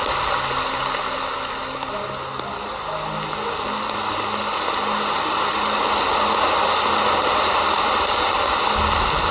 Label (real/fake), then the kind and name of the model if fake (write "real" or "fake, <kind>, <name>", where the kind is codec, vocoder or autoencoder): real